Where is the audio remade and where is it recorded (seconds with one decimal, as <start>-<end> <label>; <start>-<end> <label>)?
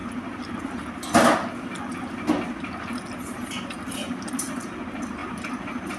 0.0-6.0 recorded